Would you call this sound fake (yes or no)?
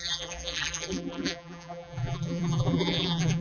yes